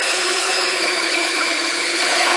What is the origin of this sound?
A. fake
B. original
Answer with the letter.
A